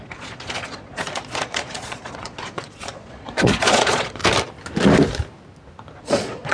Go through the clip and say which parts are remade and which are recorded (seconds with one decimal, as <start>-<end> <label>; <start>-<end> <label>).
0.0-4.2 remade; 4.2-6.0 recorded; 6.0-6.5 remade